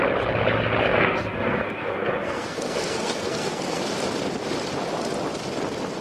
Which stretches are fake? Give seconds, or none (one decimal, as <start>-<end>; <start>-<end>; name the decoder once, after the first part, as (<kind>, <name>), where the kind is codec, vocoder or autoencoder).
0.9-3.8 (codec, SNAC)